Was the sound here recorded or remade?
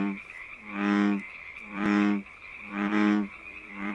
remade